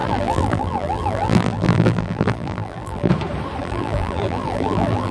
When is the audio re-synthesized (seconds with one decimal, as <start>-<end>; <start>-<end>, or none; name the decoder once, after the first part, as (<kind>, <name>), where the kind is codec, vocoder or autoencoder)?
0.0-3.1 (vocoder, BigVGAN v2); 3.6-5.1